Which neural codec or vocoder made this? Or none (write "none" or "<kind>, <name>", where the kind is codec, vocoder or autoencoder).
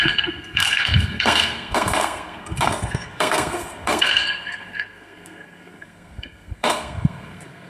codec, SNAC